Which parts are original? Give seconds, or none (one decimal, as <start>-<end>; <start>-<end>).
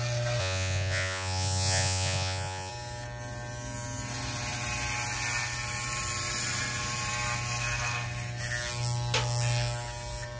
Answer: 0.0-0.4; 2.7-10.4